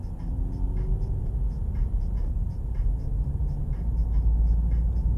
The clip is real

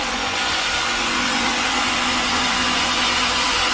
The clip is fake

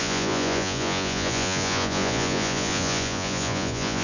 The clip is fake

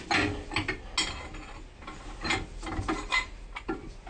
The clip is real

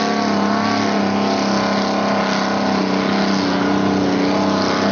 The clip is real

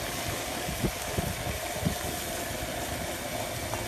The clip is real